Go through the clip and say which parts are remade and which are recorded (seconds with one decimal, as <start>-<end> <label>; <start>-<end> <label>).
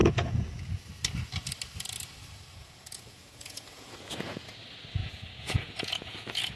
0.0-0.8 remade; 0.8-2.6 recorded; 2.6-4.4 remade; 4.4-5.0 recorded; 5.0-6.6 remade